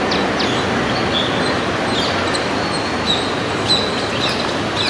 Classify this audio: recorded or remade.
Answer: recorded